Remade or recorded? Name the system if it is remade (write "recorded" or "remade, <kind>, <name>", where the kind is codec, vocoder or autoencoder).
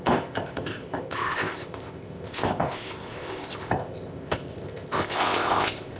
remade, codec, ZipCodec